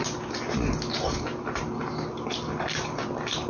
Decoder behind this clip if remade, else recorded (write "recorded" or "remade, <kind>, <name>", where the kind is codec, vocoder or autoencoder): recorded